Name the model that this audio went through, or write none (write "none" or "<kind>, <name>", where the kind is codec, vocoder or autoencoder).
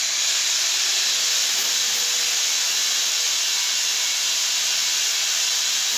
none